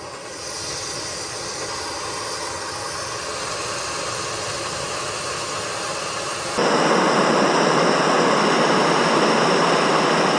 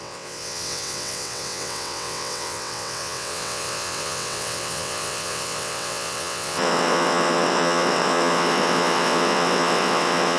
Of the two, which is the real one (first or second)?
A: first